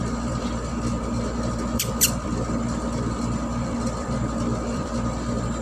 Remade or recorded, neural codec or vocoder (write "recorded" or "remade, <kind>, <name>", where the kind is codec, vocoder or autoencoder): remade, vocoder, BigVGAN v2